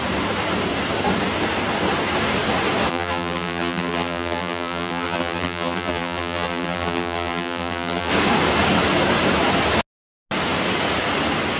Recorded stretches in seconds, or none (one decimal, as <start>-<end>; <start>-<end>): 0.0-2.9; 8.1-11.6